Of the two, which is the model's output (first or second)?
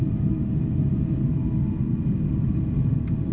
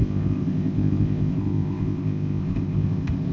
second